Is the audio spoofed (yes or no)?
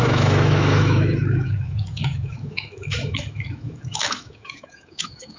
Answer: yes